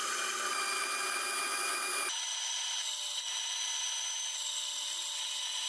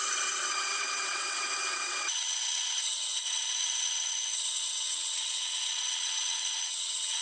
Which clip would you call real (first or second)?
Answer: first